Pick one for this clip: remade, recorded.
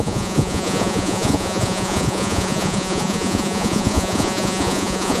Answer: remade